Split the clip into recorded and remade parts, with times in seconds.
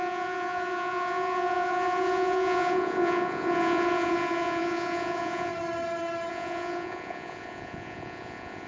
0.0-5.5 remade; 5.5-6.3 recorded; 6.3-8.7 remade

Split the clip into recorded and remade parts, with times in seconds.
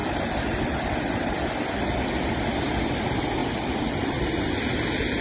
0.0-5.2 recorded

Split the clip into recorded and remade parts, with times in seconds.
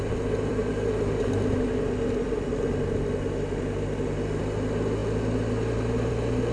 0.0-6.5 recorded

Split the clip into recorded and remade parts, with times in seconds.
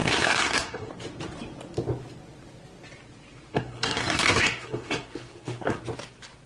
0.0-0.9 remade; 0.9-3.5 recorded; 3.5-5.8 remade; 5.8-6.5 recorded